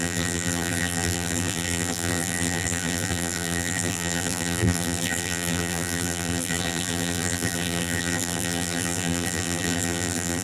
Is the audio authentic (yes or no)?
no